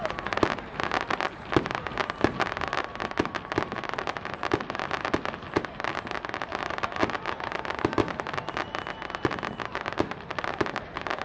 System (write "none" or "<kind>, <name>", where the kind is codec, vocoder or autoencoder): none